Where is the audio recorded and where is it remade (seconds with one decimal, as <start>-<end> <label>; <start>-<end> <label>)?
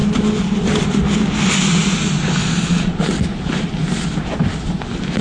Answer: 0.0-2.4 recorded; 2.4-3.0 remade; 3.0-5.2 recorded